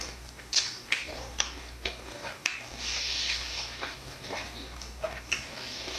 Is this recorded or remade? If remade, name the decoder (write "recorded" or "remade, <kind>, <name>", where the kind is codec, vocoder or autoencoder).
remade, codec, DAC